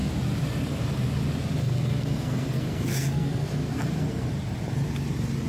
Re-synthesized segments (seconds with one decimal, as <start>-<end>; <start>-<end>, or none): 1.6-4.3

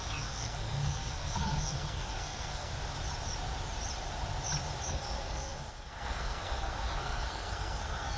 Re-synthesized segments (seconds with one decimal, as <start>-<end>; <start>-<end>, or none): 0.0-2.7; 4.9-8.2

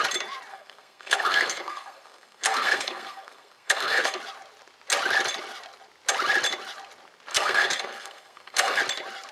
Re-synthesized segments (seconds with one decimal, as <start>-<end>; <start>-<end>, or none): 0.5-4.2; 7.3-8.8

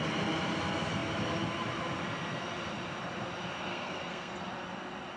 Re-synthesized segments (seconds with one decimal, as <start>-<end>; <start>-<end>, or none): 3.7-4.3

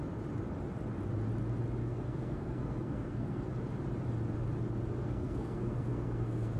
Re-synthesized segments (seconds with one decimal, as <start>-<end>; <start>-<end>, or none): 1.8-3.5; 5.0-6.6

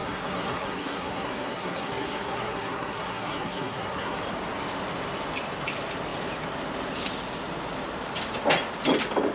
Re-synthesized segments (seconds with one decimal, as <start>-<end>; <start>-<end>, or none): 0.0-4.2

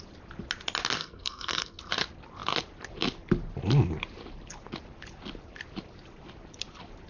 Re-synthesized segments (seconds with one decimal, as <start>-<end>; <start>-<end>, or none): 1.0-1.8

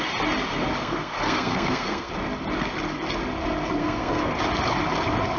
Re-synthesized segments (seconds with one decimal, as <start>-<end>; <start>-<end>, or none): 0.8-2.1; 3.8-4.4